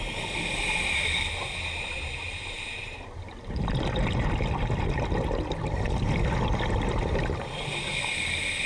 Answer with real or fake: real